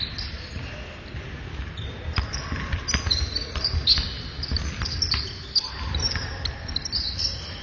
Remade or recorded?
recorded